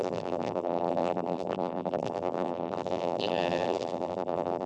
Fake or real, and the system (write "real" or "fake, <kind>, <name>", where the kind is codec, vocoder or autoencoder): fake, vocoder, BigVGAN v2